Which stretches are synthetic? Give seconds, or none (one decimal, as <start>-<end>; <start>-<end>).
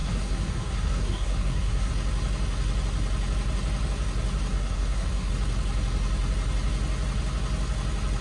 0.0-1.9; 4.5-5.3